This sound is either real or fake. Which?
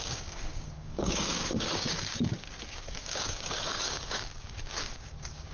fake